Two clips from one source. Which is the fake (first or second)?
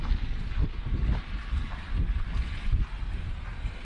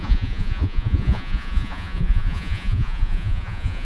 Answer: second